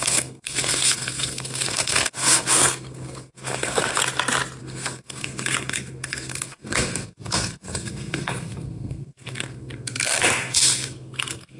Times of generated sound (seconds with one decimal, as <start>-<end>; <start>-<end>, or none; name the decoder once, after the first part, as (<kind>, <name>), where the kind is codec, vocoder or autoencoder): 0.0-4.0 (codec, SNAC); 4.6-11.6